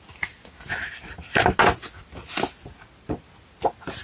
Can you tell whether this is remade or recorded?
recorded